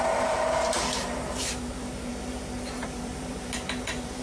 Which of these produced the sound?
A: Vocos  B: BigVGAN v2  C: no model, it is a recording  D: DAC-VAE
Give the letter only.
B